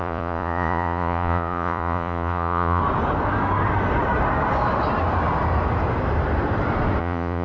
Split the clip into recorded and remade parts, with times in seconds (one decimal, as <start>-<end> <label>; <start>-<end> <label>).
0.0-2.8 remade; 2.8-7.0 recorded; 7.0-7.4 remade